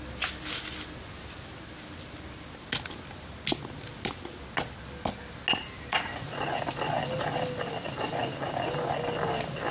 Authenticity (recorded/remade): recorded